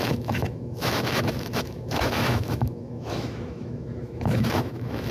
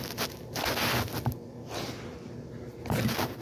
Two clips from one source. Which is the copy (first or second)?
first